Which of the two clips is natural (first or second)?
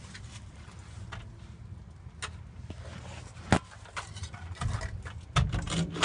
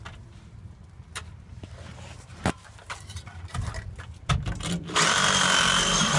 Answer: first